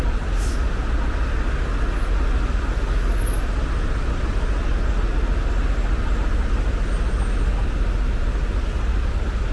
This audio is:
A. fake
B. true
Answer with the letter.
B